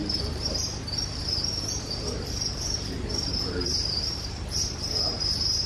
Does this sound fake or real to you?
fake